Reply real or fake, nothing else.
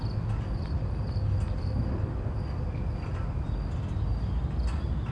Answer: real